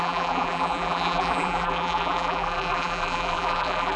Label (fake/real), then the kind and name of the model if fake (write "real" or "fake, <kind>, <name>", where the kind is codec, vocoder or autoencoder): fake, vocoder, BigVGAN v2